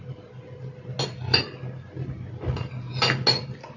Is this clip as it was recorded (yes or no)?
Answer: yes